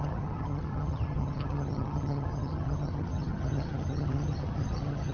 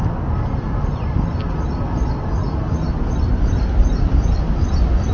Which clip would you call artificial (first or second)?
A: first